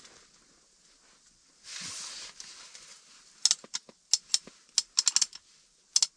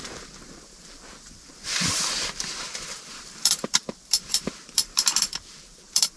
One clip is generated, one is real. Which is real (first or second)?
first